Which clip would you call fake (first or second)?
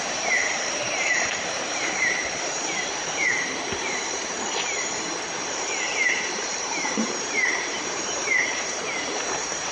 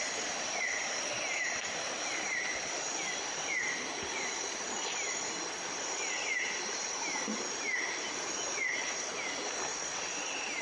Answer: first